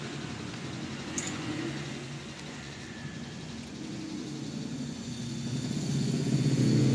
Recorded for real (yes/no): no